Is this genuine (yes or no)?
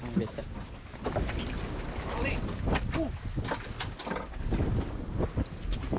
yes